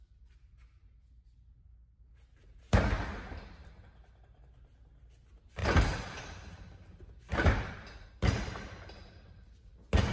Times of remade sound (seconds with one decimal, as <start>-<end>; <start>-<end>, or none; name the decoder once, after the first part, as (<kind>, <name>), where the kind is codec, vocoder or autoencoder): none

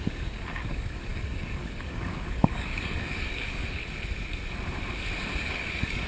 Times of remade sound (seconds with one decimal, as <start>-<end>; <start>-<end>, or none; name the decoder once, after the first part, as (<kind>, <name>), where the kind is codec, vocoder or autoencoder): 0.0-3.8 (codec, DAC); 5.4-6.1

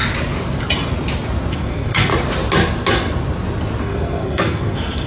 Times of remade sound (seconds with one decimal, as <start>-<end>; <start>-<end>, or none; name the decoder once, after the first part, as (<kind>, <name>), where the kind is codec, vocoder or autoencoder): 1.5-2.1 (codec, SNAC); 3.8-5.1

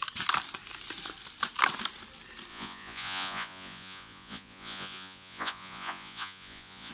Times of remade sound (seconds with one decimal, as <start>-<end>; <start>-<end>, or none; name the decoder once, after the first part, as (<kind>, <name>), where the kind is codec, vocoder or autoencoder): 2.5-6.9 (vocoder, Vocos)

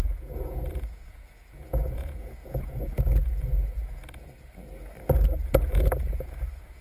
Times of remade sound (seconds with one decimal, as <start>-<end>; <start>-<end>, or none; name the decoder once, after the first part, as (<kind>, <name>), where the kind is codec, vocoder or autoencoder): 0.0-4.0 (vocoder, Vocos); 5.5-6.8

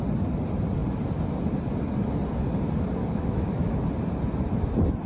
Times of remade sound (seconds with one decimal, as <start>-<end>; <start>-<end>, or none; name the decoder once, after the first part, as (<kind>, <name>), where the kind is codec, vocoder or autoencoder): 3.0-3.8 (autoencoder, DAC-VAE)

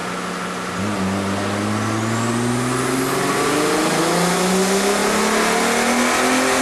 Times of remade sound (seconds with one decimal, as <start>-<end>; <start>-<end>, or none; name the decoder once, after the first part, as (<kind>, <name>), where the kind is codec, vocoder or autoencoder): none

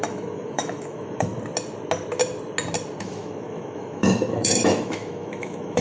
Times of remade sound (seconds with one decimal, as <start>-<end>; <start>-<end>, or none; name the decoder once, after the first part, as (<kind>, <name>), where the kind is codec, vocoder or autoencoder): 0.0-1.3 (autoencoder, DAC-VAE); 3.0-5.8